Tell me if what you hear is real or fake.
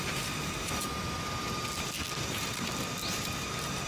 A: real